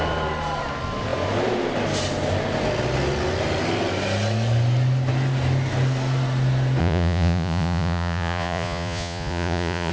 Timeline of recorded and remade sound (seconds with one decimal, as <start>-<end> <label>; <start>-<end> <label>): 0.0-6.8 recorded; 6.8-9.9 remade